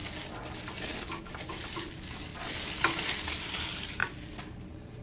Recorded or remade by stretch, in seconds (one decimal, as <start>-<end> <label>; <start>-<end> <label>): 0.0-1.2 recorded; 1.2-2.3 remade; 2.3-3.4 recorded; 3.4-4.0 remade; 4.0-4.6 recorded; 4.6-5.0 remade